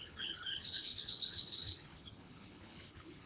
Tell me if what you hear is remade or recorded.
remade